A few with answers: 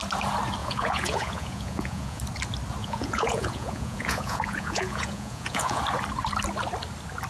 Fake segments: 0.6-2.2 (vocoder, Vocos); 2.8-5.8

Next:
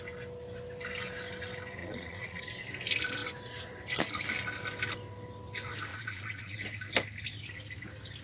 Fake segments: 1.8-2.4 (vocoder, Vocos); 5.9-6.6

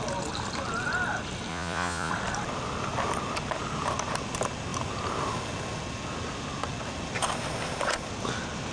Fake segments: 1.5-2.1 (vocoder, Vocos)